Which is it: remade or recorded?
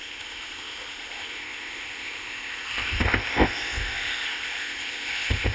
remade